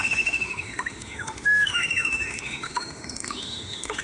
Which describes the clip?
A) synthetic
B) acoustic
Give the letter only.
A